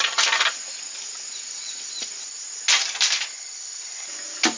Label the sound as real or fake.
real